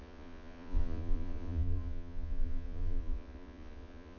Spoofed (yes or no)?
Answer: yes